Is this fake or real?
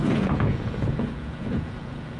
fake